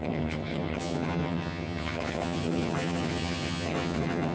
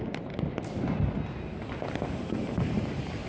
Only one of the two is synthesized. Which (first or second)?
first